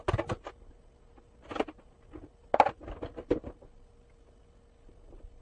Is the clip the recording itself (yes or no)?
yes